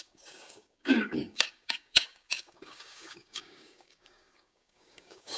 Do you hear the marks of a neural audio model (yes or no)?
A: yes